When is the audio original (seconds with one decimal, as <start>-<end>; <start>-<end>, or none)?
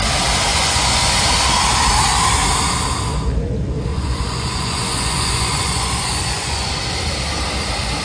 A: 0.0-0.5; 1.1-3.9; 6.7-8.0